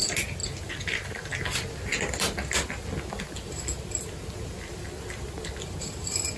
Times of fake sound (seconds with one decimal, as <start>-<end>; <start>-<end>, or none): none